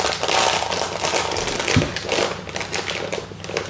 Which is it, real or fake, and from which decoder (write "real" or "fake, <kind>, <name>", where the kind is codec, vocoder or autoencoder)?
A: real